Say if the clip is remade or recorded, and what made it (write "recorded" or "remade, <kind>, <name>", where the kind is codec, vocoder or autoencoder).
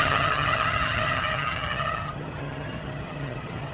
remade, vocoder, HiFi-GAN